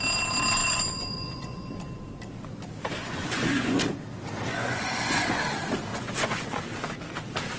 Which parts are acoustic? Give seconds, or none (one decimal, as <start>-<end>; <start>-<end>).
0.0-0.6; 1.7-3.0; 3.8-4.5; 5.4-5.9; 6.6-7.6